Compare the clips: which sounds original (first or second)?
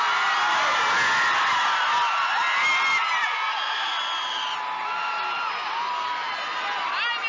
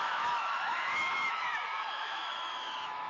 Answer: first